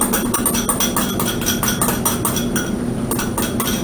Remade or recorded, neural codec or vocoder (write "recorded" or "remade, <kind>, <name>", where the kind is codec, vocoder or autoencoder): recorded